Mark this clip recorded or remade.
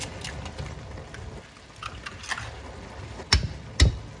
recorded